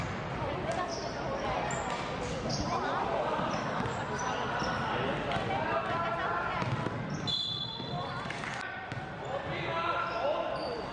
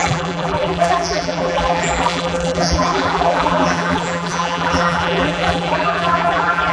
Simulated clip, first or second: second